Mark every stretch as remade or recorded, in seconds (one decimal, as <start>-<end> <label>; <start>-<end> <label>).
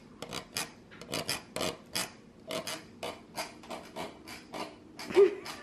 0.0-5.6 recorded